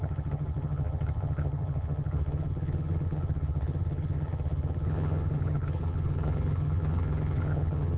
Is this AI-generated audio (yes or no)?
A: yes